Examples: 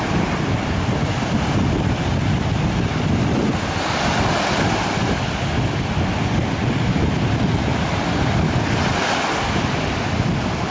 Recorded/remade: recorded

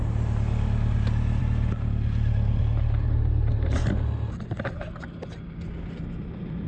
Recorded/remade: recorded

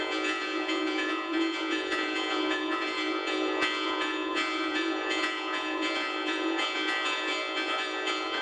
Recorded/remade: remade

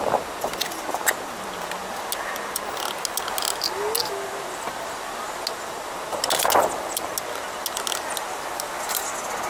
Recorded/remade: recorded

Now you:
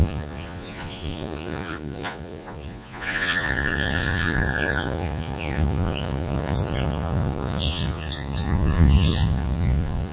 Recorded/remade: remade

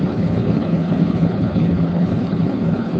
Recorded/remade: remade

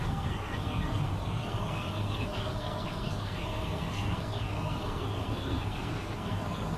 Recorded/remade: remade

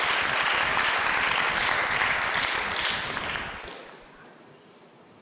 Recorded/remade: recorded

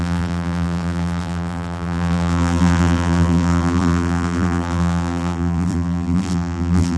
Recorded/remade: remade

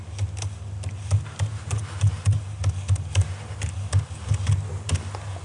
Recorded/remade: recorded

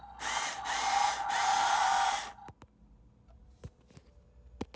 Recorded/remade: recorded